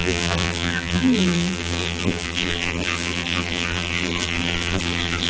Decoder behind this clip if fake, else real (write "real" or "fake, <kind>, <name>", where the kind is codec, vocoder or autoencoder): fake, vocoder, BigVGAN v2